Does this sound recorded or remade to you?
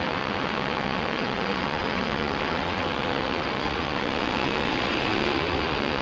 remade